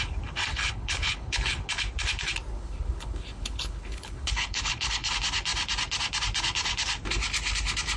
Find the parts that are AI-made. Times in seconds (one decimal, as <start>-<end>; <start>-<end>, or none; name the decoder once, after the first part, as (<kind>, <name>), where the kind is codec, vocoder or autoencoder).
0.5-1.7 (codec, HILCodec); 2.5-5.1